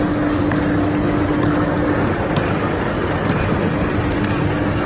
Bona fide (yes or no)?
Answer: yes